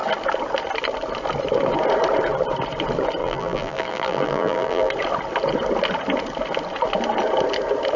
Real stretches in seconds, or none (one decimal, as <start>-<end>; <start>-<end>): 0.0-3.2; 4.9-8.0